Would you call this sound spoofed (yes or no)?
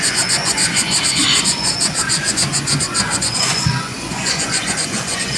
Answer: yes